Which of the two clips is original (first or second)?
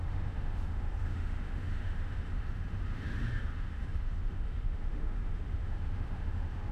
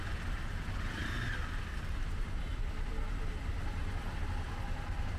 second